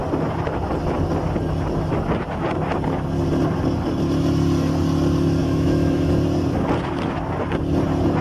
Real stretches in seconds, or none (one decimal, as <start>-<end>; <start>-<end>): 0.0-5.4; 6.1-8.2